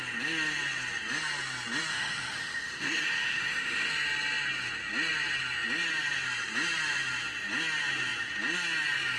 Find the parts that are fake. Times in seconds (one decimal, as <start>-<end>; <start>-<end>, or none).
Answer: 1.9-3.9